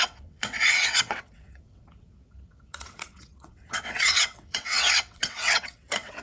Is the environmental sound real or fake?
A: fake